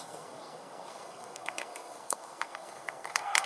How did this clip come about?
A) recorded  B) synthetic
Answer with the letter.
B